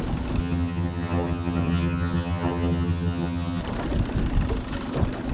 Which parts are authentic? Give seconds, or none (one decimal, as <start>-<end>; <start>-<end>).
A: 0.0-0.4; 3.6-5.3